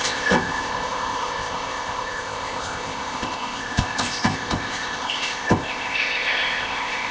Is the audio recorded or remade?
remade